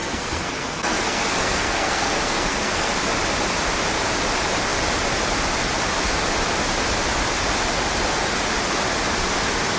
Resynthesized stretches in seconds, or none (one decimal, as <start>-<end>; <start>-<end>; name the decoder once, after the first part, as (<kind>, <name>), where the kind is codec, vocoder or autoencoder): 0.0-2.9 (codec, SNAC)